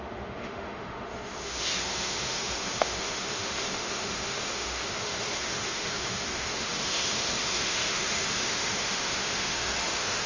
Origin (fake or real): fake